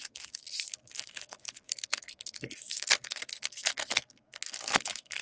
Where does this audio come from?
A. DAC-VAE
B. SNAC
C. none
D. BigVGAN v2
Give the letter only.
B